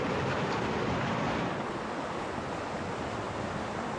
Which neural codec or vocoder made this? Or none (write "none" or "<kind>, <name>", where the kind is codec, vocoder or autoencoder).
none